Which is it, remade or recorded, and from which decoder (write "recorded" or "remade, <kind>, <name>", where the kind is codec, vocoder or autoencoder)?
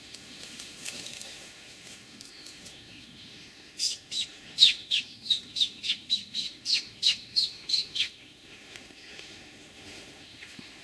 remade, autoencoder, DAC-VAE